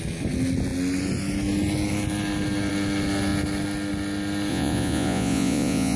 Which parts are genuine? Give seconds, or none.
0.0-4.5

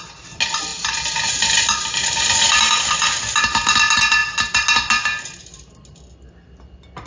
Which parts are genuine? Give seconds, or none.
0.0-7.1

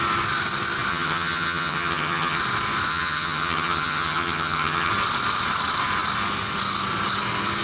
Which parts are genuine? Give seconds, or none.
0.0-0.9; 2.4-2.9; 4.9-7.6

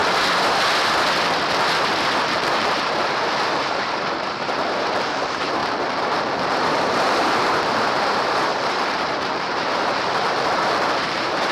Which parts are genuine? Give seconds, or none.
0.0-2.3

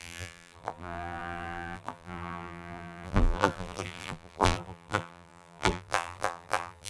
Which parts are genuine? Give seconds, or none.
none

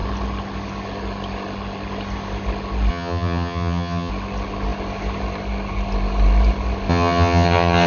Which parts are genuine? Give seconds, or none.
0.0-2.9; 4.1-6.9

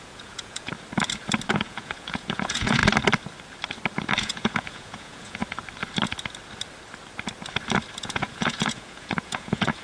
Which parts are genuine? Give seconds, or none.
0.7-1.5; 2.8-4.2; 5.4-8.0